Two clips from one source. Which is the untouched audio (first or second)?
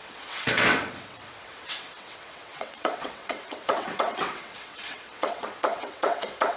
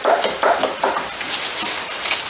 second